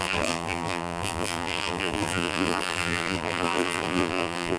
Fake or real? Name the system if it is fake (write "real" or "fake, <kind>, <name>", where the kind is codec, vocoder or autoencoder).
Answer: fake, vocoder, BigVGAN v2